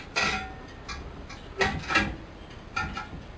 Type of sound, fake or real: real